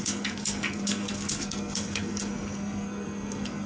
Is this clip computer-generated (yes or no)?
yes